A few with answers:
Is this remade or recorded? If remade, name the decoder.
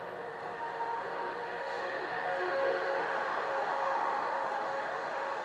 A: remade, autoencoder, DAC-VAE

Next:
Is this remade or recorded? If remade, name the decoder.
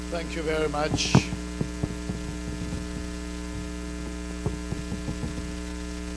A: recorded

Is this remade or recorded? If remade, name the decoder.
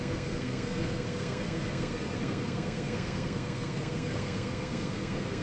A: remade, codec, SNAC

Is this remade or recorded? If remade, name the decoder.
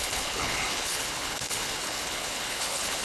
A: remade, codec, HILCodec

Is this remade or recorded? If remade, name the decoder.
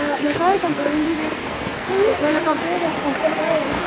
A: remade, codec, SNAC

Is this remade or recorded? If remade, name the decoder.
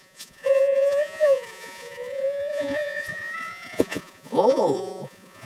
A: remade, vocoder, Vocos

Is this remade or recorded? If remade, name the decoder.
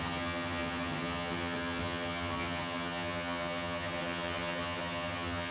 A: remade, vocoder, HiFi-GAN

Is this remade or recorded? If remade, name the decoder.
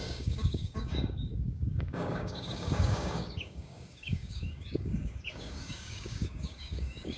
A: remade, codec, DAC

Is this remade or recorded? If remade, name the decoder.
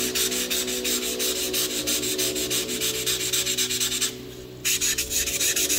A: recorded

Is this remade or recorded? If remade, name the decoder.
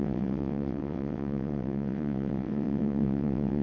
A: remade, vocoder, WaveNeXt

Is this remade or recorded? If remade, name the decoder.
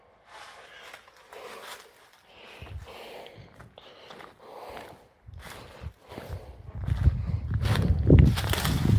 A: recorded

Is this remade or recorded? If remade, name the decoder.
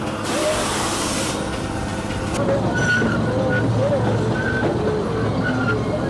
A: recorded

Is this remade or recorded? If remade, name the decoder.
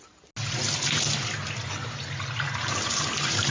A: recorded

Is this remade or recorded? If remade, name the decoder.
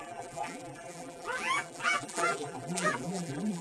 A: remade, vocoder, BigVGAN v2